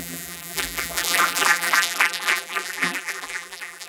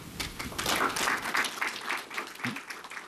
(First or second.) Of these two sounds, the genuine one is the second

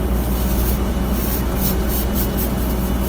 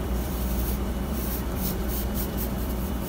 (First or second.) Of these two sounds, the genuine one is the first